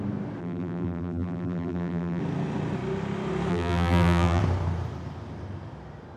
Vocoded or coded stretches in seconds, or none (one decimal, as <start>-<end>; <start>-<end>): 0.4-2.2; 3.5-4.4